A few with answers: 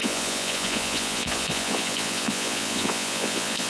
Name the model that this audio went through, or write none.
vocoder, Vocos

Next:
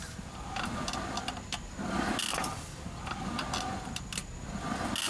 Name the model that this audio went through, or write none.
none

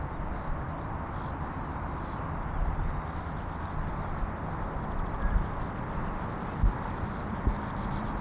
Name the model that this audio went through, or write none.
none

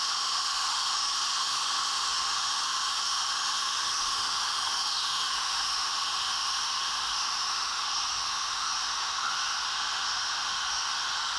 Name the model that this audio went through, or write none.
autoencoder, DAC-VAE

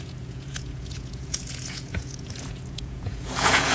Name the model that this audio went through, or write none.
vocoder, Vocos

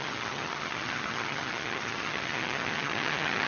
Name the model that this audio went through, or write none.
vocoder, HiFi-GAN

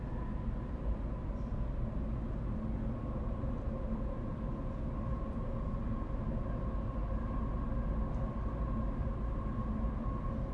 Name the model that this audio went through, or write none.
none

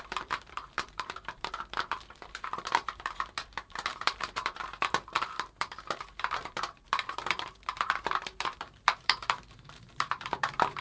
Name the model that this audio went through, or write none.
vocoder, BigVGAN v2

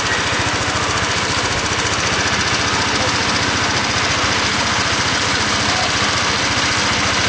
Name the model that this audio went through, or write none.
none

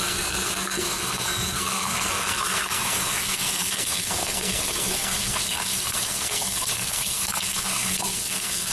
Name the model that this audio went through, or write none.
codec, SNAC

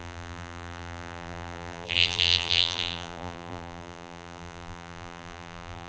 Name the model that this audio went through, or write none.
vocoder, BigVGAN v2